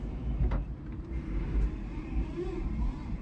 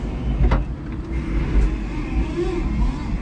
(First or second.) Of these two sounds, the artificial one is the first